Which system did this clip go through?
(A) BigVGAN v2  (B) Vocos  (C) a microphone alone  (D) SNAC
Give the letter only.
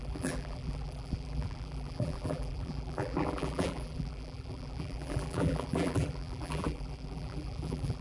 A